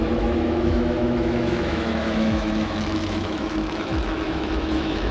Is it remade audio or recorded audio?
remade